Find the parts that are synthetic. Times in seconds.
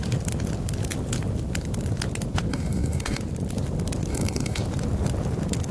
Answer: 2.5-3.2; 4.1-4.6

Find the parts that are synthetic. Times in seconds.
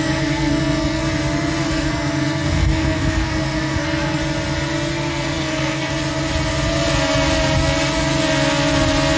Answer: 0.0-1.0; 1.7-4.2; 5.1-5.9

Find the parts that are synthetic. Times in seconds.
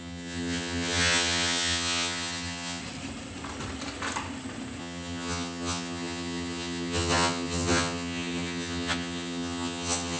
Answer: 0.0-2.8; 4.8-10.2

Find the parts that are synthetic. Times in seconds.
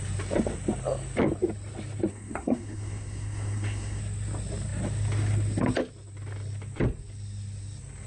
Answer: 2.1-4.0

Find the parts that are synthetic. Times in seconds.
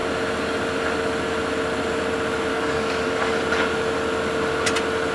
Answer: 2.5-3.4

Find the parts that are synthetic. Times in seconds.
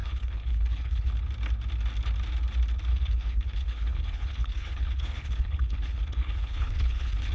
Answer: 0.0-1.1; 2.9-7.3